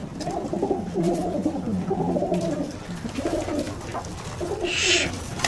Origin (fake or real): fake